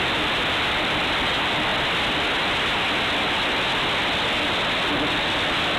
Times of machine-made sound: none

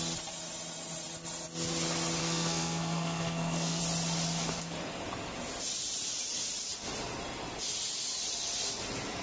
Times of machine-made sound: 2.2-3.8 (codec, SNAC)

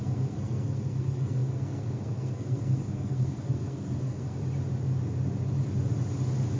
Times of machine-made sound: 0.0-4.4 (codec, SNAC)

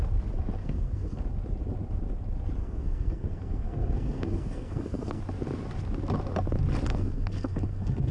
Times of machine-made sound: 0.6-1.2 (codec, SNAC); 2.6-5.2; 6.9-8.1

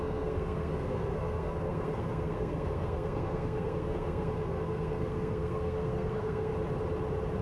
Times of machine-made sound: 0.0-6.5 (codec, SNAC)

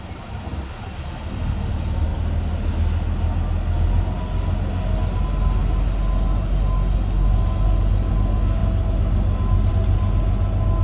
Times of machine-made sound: none

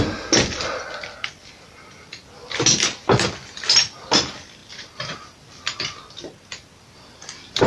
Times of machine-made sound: none

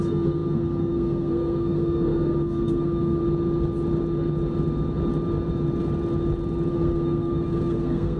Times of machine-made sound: 0.0-3.2 (codec, SNAC); 6.7-8.2